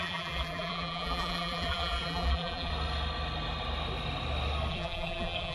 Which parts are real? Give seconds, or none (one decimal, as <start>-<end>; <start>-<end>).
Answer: 2.7-4.7